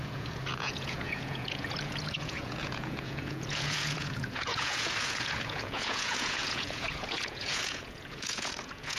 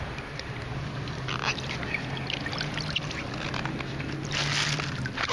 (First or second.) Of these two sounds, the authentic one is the second